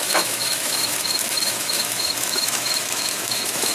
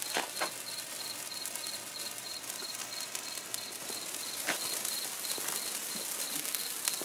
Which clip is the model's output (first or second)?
first